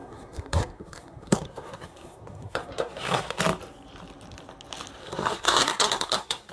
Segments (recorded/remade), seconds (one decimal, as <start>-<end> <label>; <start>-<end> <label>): 0.0-3.4 remade; 3.4-5.0 recorded; 5.0-6.5 remade